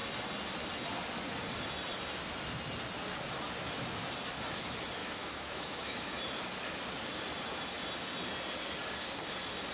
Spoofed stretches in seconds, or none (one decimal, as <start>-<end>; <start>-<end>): 5.0-6.2